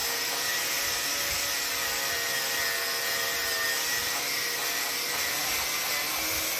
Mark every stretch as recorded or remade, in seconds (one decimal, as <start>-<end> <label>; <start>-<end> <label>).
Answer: 0.0-6.6 recorded